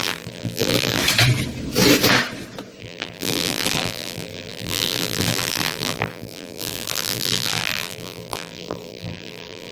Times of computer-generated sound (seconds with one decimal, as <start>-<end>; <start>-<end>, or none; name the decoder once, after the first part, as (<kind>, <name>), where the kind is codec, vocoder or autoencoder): 0.0-1.0 (vocoder, BigVGAN v2); 2.8-9.7